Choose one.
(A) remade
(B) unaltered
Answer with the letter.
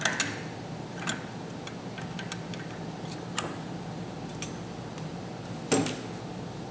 B